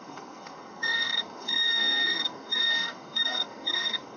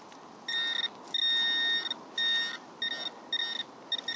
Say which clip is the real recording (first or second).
second